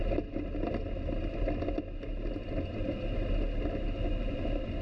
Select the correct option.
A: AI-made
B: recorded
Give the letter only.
B